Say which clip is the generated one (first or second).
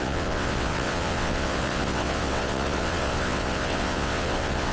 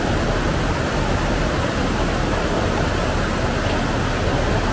first